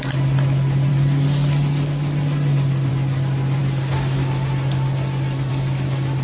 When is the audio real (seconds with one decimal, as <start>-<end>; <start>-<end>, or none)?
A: 0.0-6.2